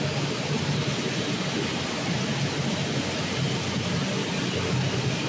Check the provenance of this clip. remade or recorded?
recorded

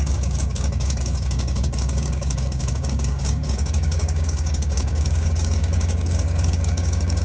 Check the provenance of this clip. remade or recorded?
remade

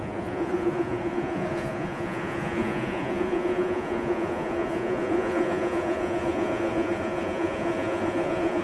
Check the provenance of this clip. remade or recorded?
remade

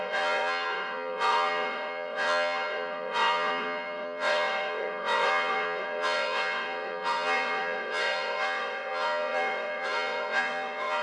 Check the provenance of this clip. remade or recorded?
remade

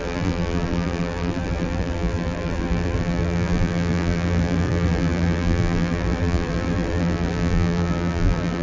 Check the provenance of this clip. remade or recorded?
remade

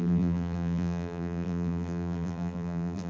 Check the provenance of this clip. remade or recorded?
remade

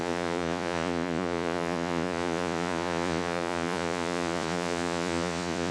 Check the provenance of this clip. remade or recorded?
remade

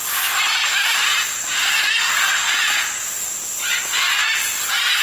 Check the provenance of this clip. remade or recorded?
recorded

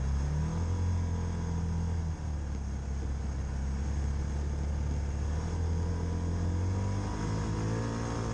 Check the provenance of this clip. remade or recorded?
recorded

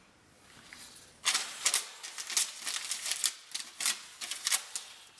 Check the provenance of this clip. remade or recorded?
recorded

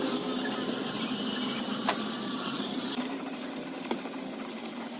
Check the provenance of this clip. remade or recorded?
remade